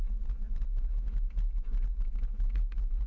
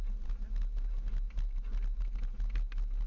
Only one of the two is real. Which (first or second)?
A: second